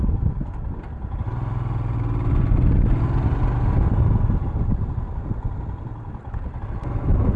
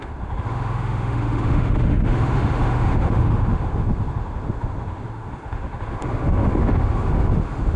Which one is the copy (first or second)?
second